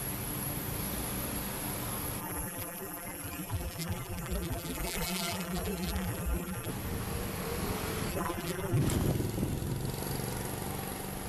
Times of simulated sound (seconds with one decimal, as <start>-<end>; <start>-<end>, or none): 2.2-6.7; 8.1-8.8

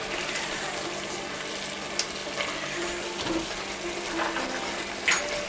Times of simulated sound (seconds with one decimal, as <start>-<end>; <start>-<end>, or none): none